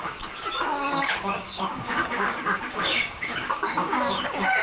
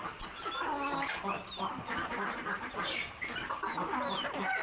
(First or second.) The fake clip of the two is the first